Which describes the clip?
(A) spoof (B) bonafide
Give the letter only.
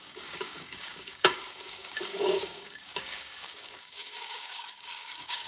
A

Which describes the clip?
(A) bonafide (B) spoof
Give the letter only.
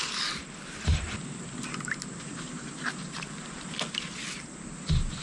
A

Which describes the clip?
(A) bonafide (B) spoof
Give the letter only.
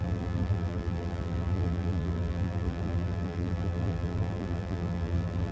B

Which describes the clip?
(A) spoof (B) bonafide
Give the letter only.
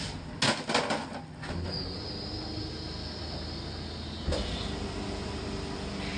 B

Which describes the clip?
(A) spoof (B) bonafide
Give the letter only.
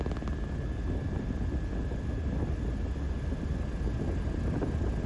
B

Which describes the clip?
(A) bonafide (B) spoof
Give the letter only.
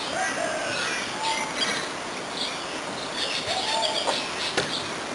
A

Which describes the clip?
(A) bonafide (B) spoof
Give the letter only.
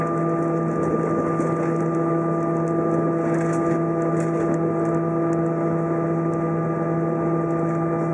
A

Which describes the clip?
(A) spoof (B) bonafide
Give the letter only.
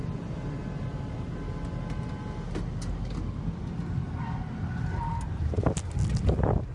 B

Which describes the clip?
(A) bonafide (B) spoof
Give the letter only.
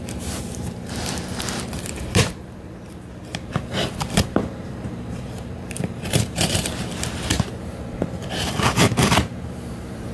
B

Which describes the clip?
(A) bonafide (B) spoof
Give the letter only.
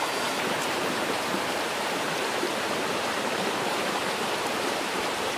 B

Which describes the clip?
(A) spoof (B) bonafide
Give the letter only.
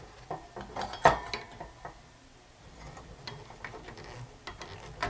B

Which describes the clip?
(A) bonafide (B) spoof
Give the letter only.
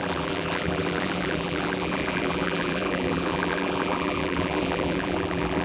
B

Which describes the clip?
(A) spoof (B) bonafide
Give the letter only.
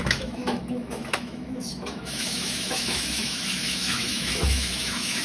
A